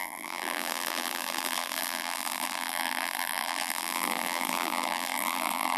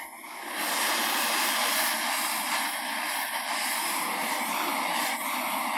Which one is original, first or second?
second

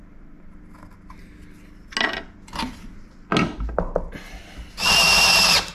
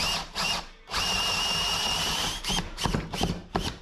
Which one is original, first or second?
first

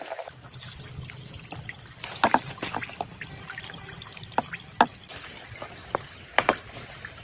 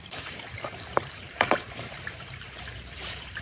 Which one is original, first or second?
first